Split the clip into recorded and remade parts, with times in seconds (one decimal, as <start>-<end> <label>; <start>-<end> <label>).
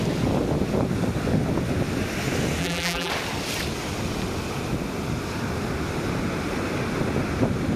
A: 0.0-2.6 recorded; 2.6-3.1 remade; 3.1-7.8 recorded